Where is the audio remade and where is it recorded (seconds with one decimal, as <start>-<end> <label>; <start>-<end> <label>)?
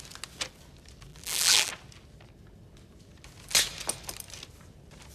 0.0-1.1 recorded; 1.1-1.7 remade; 1.7-5.1 recorded